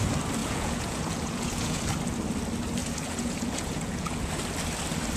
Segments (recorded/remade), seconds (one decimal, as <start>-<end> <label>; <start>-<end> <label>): 0.0-0.4 recorded; 0.4-1.8 remade; 1.8-2.8 recorded; 2.8-4.3 remade; 4.3-5.2 recorded